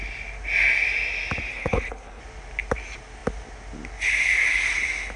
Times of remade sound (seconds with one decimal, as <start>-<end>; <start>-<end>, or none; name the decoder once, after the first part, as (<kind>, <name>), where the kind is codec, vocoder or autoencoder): 1.5-2.2 (codec, HILCodec)